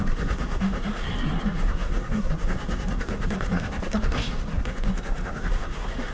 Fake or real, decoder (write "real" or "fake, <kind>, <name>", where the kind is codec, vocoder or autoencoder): fake, codec, SNAC